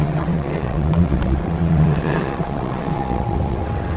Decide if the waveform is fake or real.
fake